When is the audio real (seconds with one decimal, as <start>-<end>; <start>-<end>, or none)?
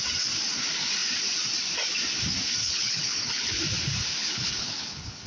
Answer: 0.0-2.6; 3.6-4.2